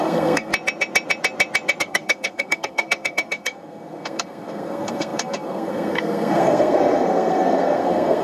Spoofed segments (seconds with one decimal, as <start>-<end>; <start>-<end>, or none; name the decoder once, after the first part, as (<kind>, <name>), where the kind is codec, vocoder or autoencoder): 0.0-0.5 (codec, SNAC); 1.8-8.2